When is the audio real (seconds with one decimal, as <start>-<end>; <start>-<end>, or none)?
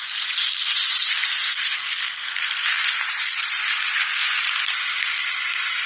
0.0-5.9